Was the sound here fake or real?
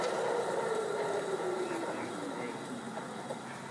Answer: real